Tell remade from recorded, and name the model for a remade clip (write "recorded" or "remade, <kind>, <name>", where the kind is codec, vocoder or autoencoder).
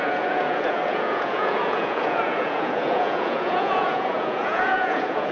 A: remade, vocoder, Vocos